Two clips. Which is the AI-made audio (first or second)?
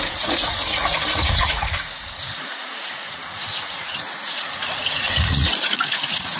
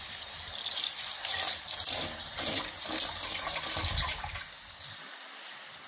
first